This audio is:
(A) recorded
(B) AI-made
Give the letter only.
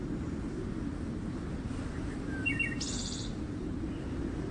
A